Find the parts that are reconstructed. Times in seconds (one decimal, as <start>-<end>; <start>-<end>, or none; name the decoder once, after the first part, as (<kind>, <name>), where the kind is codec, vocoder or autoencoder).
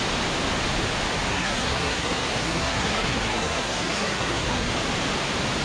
1.3-4.7 (codec, SNAC)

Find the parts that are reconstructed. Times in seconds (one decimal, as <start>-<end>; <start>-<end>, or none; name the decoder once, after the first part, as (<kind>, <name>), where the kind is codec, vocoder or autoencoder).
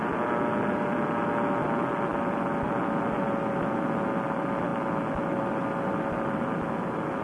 none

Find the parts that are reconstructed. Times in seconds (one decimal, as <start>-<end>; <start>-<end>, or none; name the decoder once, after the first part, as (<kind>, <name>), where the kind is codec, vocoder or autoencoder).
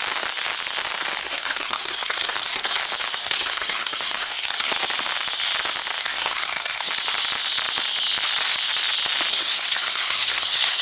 1.2-2.8 (codec, SNAC); 3.2-4.7; 6.0-6.9; 9.3-10.8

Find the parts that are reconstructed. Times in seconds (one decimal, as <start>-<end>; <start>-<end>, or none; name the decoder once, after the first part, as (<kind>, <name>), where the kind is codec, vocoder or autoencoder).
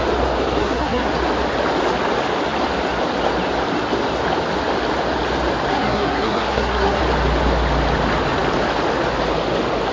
0.6-1.1 (codec, SNAC); 5.7-7.0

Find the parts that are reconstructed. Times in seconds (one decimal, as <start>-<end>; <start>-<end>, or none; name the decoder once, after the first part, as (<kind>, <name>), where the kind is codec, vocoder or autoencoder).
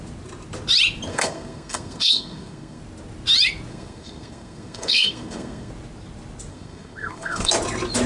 1.1-2.8 (codec, SNAC); 3.7-5.7; 6.5-7.5